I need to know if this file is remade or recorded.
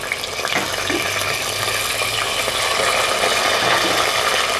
recorded